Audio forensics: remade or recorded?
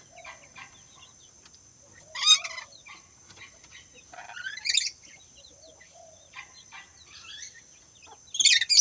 recorded